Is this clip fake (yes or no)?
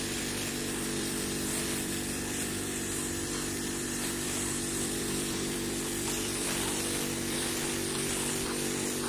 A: yes